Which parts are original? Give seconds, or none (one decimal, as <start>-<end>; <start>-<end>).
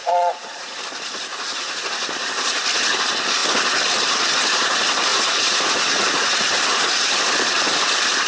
0.8-1.3; 1.8-5.1; 6.6-8.3